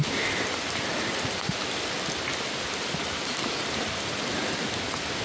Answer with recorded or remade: recorded